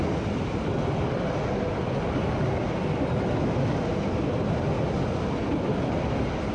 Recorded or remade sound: recorded